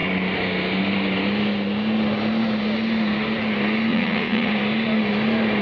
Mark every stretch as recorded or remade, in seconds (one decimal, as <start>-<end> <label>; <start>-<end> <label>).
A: 0.0-3.9 recorded; 3.9-4.5 remade; 4.5-5.6 recorded